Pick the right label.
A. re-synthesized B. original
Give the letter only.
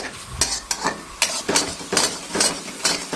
B